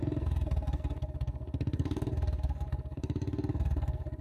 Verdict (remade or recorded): remade